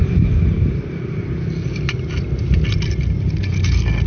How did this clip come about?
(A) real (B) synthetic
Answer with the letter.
A